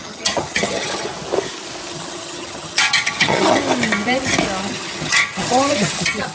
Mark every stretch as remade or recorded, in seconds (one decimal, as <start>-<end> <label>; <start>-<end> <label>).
0.0-1.1 remade; 1.1-1.9 recorded; 1.9-3.6 remade; 3.6-4.6 recorded; 4.6-6.3 remade